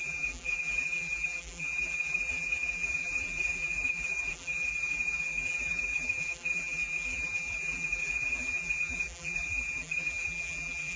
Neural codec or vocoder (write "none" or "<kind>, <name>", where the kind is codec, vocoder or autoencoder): vocoder, BigVGAN v2